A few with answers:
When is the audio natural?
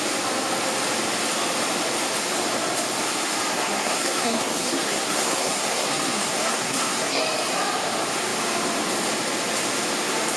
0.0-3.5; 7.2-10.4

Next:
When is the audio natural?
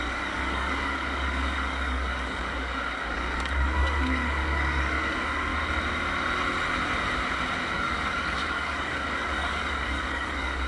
5.5-7.7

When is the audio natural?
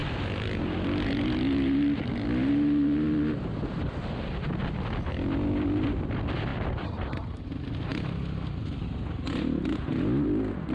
0.0-10.7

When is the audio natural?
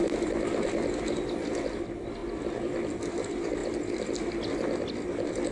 0.0-3.6; 4.9-5.5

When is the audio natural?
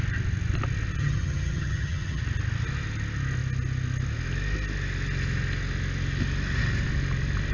0.0-1.0; 2.2-7.5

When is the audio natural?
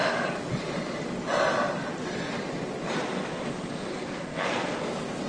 0.0-3.9; 4.8-5.3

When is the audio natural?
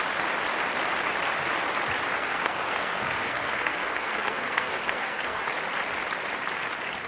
0.0-2.2; 5.4-7.1